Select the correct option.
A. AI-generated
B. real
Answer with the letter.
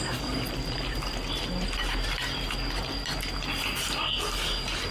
B